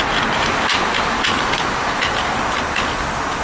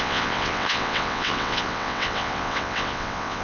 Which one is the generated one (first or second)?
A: second